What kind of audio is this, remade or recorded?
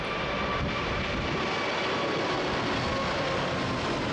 recorded